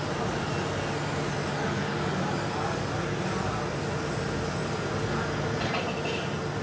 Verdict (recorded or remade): recorded